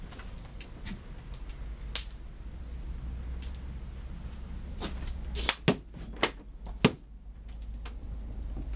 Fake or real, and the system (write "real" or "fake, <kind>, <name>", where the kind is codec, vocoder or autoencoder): real